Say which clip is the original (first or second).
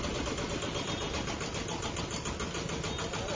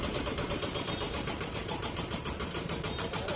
first